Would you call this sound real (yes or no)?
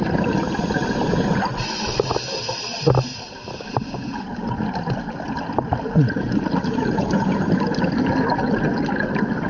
yes